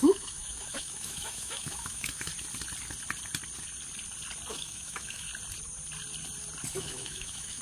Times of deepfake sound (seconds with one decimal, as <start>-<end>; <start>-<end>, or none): 0.0-2.3; 4.5-5.3; 6.7-7.6